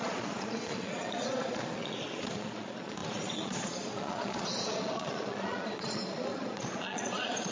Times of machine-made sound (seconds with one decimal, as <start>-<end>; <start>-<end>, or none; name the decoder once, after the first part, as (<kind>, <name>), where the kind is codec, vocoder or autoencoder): 0.0-7.5 (vocoder, Vocos)